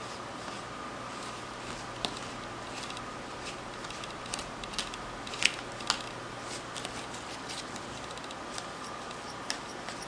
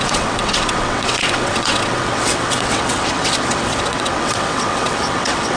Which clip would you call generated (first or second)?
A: second